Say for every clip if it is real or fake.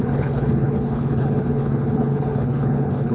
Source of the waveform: fake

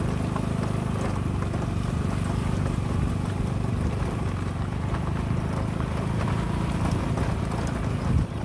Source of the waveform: real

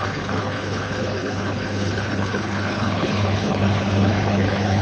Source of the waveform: fake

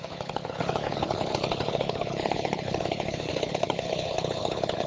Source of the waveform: fake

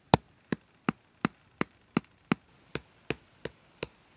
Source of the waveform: real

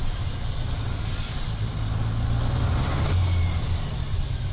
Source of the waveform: real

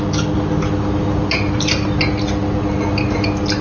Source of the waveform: real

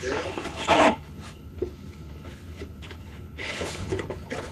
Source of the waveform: fake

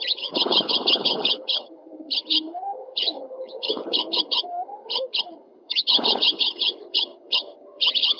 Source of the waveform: fake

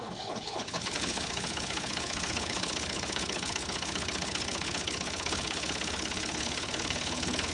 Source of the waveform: fake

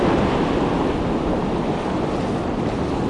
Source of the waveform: real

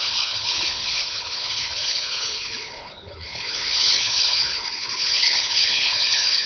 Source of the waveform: fake